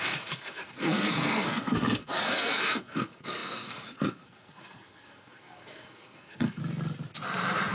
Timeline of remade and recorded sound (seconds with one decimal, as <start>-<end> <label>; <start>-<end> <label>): 0.0-6.6 remade; 6.6-7.7 recorded